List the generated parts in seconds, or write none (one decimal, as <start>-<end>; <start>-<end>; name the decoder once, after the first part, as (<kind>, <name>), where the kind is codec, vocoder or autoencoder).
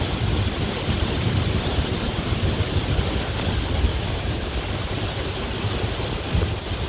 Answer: 3.9-4.5 (codec, DAC)